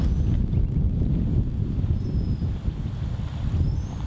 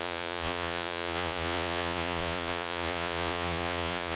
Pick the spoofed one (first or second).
second